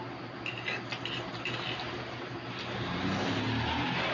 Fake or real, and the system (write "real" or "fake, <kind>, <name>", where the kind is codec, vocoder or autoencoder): real